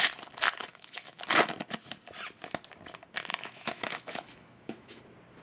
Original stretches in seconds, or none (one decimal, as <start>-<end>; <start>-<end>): 0.0-0.7; 1.2-3.3; 5.0-5.4